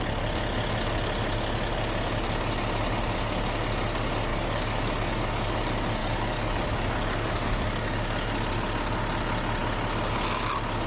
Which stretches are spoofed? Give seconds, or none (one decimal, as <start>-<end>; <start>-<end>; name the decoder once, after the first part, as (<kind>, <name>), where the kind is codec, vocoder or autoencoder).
4.3-5.5 (codec, DAC); 6.0-8.3